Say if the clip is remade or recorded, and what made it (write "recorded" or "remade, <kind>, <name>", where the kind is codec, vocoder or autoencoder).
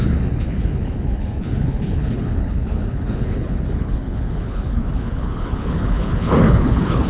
remade, codec, HILCodec